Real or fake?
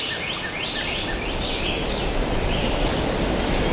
real